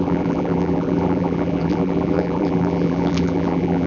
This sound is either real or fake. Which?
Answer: fake